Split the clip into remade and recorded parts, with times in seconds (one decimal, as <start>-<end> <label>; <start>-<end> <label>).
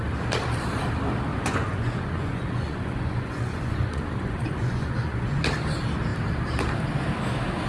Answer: 0.0-1.3 recorded; 1.3-5.4 remade; 5.4-7.7 recorded